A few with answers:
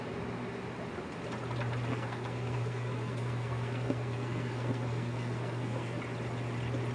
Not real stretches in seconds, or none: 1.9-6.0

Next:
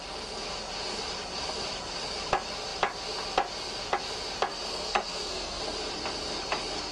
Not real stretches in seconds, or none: 4.5-5.6

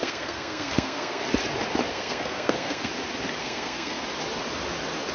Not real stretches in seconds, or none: 0.0-1.2; 1.9-2.9; 3.4-4.0

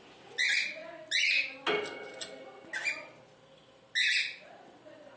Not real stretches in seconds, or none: none

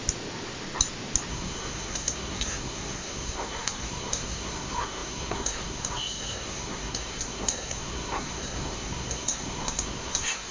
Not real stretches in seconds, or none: 1.3-10.5